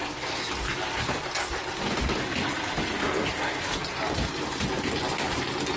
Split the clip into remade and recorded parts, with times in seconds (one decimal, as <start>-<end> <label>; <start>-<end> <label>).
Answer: 0.0-5.8 recorded